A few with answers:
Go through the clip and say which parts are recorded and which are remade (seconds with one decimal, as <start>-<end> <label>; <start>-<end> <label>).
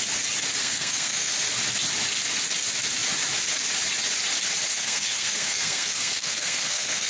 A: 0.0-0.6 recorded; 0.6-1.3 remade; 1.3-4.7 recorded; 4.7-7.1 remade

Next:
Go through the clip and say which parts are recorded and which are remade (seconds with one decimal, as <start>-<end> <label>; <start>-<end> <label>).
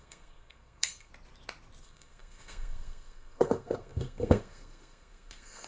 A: 0.0-1.1 remade; 1.1-1.8 recorded; 1.8-5.7 remade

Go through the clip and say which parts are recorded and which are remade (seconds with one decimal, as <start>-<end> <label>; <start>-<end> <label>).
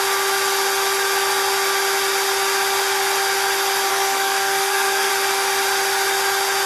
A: 0.0-3.9 recorded; 3.9-5.1 remade; 5.1-6.7 recorded